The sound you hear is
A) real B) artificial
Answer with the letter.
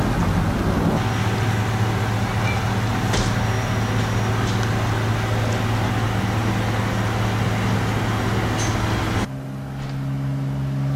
A